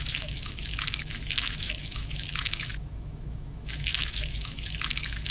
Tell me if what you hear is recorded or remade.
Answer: remade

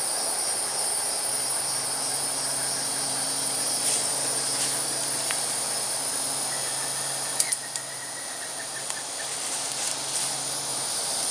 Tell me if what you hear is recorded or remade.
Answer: recorded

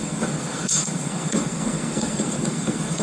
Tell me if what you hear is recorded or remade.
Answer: remade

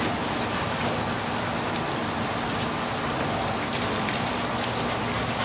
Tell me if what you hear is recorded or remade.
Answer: recorded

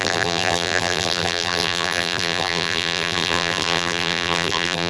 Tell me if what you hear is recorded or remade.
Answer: remade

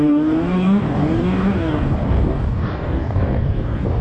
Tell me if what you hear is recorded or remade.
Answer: remade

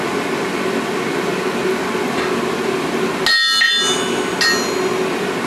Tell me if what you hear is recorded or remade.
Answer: recorded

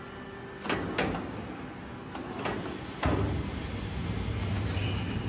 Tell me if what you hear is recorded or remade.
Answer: recorded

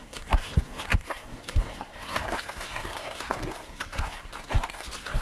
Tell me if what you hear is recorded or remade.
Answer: remade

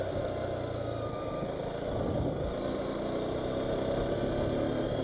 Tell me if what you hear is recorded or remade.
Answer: recorded